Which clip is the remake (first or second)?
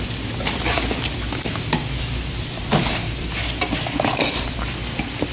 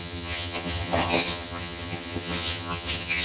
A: second